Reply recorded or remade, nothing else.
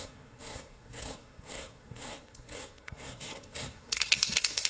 remade